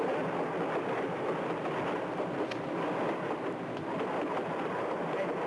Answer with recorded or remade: recorded